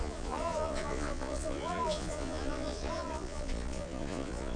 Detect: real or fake fake